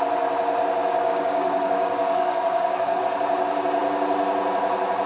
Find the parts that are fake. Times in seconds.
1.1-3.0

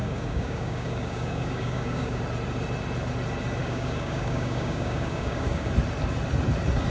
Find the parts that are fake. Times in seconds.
0.0-2.2; 3.6-5.7

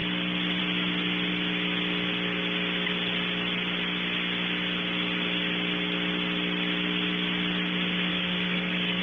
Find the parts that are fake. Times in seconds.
8.1-9.0